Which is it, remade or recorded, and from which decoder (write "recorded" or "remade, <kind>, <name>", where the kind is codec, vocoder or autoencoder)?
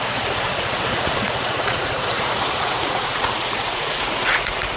remade, vocoder, Vocos